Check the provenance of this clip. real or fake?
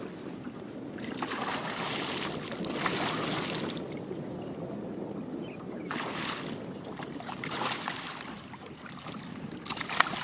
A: real